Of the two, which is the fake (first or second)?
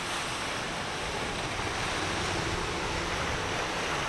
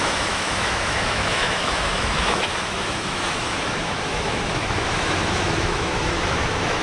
second